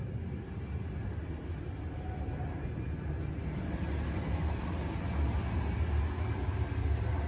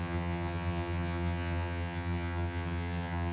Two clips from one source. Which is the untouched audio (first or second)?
first